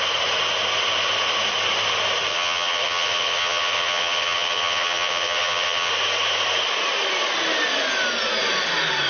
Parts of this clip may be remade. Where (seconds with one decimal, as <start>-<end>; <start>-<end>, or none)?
2.3-5.9